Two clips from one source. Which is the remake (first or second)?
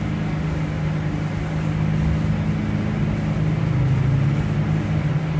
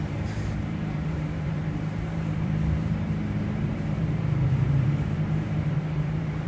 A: second